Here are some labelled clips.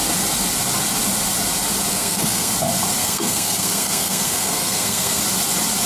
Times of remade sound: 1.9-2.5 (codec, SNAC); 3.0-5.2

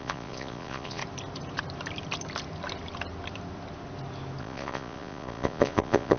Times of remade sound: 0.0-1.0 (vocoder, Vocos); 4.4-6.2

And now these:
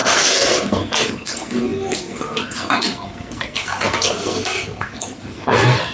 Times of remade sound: 0.0-5.9 (codec, SNAC)